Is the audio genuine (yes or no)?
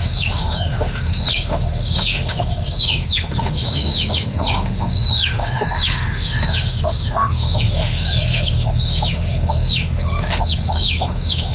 no